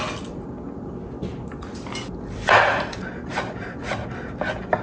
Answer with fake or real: real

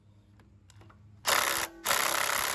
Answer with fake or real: real